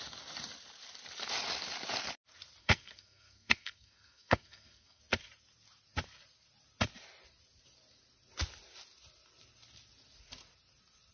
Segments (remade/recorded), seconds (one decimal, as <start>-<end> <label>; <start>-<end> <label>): 0.0-2.6 recorded; 2.6-5.0 remade; 5.0-11.1 recorded